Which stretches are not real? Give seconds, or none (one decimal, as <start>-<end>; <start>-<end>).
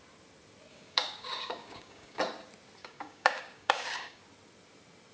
0.7-2.2; 2.8-4.2